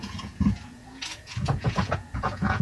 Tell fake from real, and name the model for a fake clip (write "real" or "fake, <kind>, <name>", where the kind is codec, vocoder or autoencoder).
fake, vocoder, Vocos